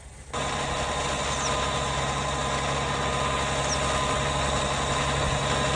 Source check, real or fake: real